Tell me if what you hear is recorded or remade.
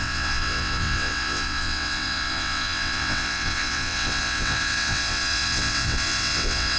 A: remade